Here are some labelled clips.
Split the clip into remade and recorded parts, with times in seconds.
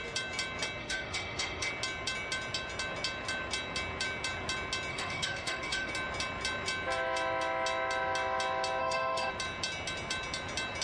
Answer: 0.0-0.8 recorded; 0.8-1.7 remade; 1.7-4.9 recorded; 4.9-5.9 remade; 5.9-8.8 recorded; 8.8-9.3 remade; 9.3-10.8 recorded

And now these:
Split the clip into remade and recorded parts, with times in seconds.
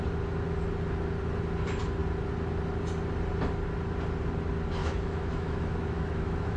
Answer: 0.0-4.8 recorded; 4.8-6.6 remade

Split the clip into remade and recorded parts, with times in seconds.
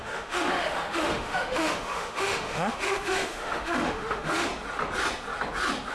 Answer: 0.0-4.5 remade; 4.5-5.9 recorded